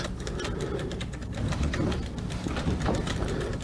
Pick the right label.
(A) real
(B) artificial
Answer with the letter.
A